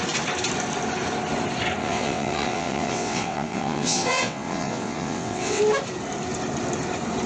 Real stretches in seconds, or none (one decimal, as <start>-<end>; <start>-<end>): 0.0-1.8; 5.6-7.3